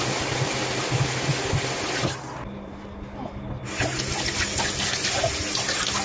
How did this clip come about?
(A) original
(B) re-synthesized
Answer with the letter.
A